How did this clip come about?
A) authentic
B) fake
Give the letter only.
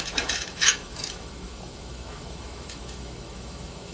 B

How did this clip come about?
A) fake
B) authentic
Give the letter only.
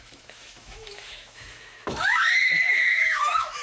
A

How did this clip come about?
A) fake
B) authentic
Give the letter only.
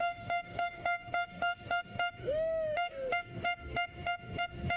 A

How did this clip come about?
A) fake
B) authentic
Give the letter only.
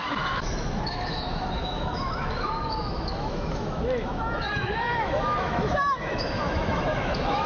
A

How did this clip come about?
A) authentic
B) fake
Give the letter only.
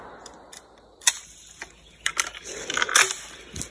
A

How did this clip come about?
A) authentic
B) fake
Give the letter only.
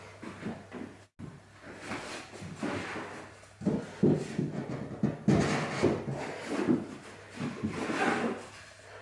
A